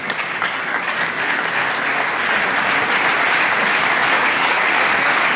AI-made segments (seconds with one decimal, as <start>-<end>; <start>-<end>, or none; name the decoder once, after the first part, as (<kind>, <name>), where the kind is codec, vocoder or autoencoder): 0.0-1.6 (codec, DAC); 3.6-5.4